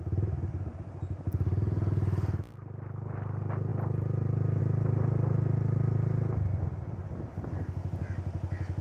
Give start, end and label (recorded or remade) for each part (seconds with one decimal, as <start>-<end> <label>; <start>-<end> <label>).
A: 0.0-8.8 recorded